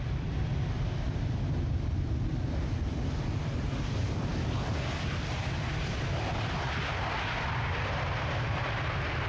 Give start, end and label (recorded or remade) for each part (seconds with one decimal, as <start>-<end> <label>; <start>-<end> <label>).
0.0-9.3 recorded